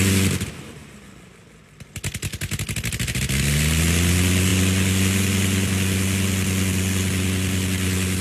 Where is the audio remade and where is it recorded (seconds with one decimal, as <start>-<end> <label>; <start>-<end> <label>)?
0.0-8.2 recorded